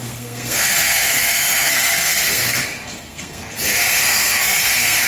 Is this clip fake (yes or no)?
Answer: yes